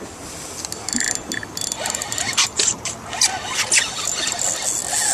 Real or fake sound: real